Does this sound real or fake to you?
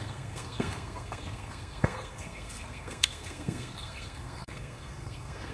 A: fake